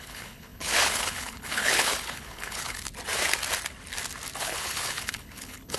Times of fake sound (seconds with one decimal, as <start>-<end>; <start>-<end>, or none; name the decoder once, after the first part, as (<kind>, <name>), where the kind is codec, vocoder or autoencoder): 0.0-2.9 (codec, HILCodec); 4.4-5.8